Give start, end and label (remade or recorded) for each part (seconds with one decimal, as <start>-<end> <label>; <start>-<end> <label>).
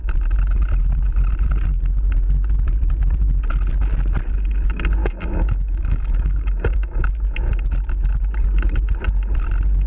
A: 0.0-5.0 recorded; 5.0-7.1 remade; 7.1-9.9 recorded